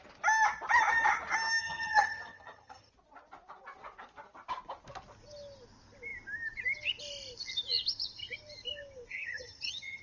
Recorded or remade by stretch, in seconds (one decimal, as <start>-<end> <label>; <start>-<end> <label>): 0.0-1.6 recorded; 1.6-2.9 remade; 2.9-9.1 recorded; 9.1-10.0 remade